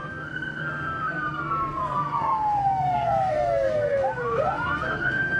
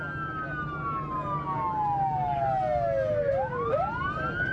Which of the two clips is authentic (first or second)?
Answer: second